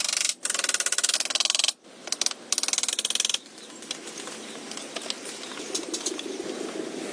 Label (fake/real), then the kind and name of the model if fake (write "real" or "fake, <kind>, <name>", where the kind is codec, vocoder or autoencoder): real